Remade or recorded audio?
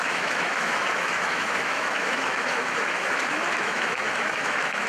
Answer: remade